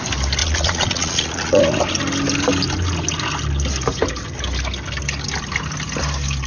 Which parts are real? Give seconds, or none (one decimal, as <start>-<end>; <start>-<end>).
0.0-0.4; 1.6-6.5